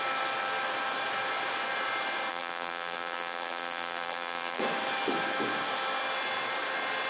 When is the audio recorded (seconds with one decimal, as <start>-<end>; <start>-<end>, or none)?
0.0-2.3; 4.6-7.1